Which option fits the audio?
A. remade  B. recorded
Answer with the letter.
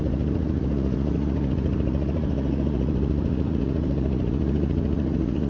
A